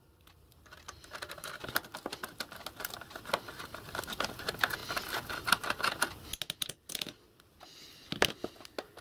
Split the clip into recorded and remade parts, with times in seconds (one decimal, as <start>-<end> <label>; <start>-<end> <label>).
0.0-9.0 recorded